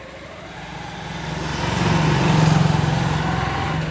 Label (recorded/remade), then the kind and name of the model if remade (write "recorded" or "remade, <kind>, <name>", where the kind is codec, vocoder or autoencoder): recorded